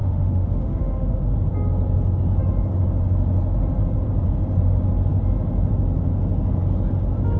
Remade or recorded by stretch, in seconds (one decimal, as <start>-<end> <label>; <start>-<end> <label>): 0.0-1.2 remade; 1.2-7.4 recorded